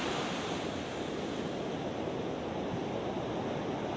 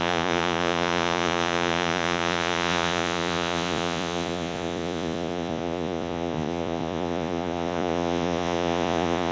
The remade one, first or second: second